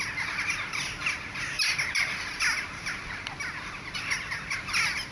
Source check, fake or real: real